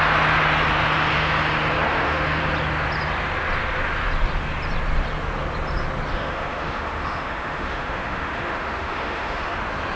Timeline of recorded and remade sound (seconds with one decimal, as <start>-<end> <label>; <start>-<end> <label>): 0.0-1.9 recorded; 1.9-2.4 remade; 2.4-6.1 recorded; 6.1-9.6 remade; 9.6-10.0 recorded